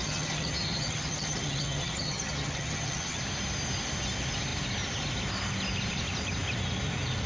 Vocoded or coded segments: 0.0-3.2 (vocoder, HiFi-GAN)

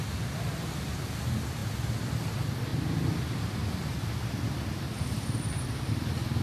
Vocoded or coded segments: 2.7-5.9 (vocoder, BigVGAN v2)

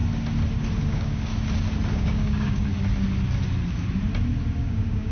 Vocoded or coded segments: 0.9-1.3 (codec, DAC); 1.9-2.7; 4.6-5.1

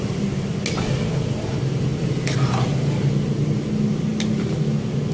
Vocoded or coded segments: none

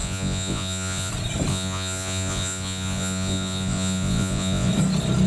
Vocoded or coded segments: 0.0-1.1 (vocoder, Vocos); 1.5-4.7

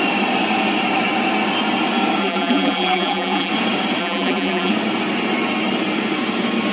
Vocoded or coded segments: 2.2-3.5 (vocoder, BigVGAN v2); 4.0-4.7